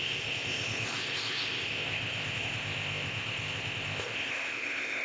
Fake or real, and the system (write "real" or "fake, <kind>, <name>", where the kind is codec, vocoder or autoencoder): fake, codec, ZipCodec